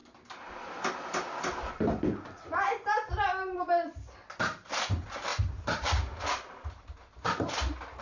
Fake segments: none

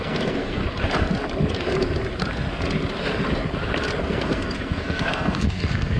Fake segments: 0.0-0.6 (codec, SNAC); 4.0-6.0

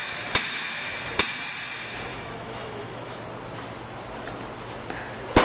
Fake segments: 0.0-1.0 (autoencoder, DAC-VAE); 2.1-3.2

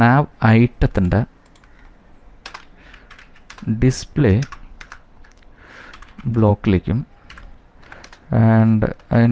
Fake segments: 4.2-6.5 (codec, HILCodec)

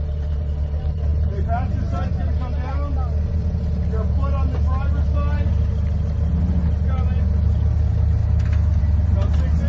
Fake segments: 8.2-8.8 (autoencoder, DAC-VAE)

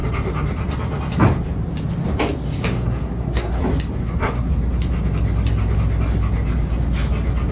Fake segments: 2.6-3.6 (codec, SNAC); 4.0-4.5